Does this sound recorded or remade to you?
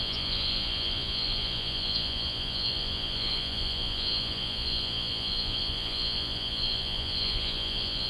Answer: remade